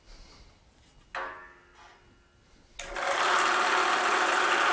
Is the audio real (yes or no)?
yes